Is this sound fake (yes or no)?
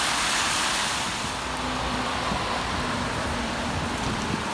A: yes